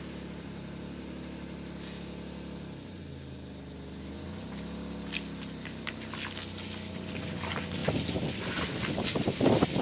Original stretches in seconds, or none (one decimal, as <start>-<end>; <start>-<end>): 0.0-9.8